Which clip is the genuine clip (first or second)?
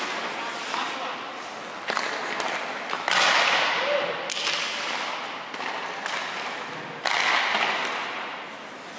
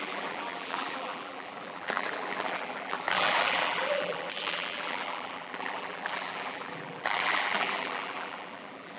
first